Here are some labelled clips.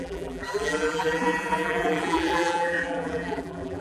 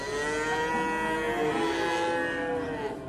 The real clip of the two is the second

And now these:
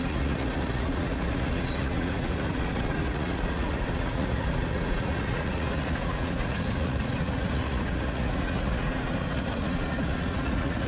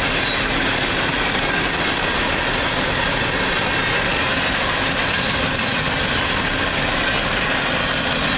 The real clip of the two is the second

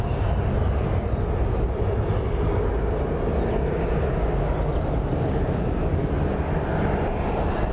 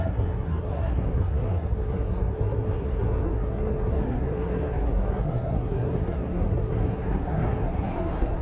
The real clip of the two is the first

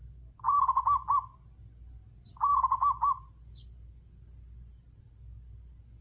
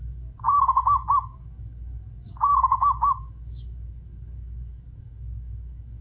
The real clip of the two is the first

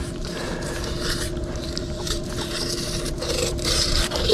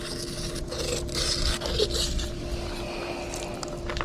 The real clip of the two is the second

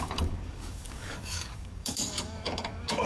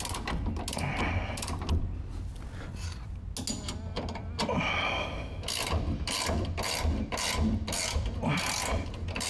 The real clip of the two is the second